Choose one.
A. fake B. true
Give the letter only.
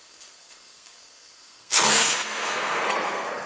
A